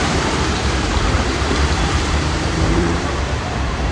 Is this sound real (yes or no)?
no